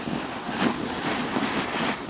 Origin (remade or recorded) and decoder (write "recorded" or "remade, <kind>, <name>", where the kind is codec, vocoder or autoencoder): recorded